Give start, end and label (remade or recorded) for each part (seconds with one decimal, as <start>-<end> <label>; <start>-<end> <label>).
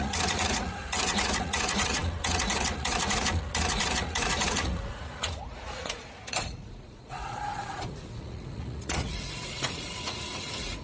0.0-10.8 remade